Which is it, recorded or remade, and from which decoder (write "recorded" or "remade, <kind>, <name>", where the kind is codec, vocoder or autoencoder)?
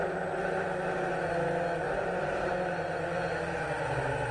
recorded